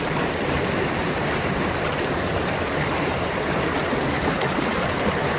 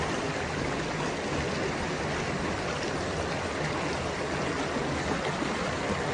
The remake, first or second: first